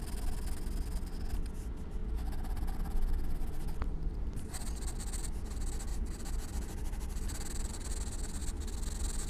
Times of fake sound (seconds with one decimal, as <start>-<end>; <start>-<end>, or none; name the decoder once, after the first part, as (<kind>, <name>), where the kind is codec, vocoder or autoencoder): 5.9-7.9 (vocoder, BigVGAN v2)